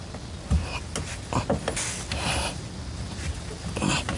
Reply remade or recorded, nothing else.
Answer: recorded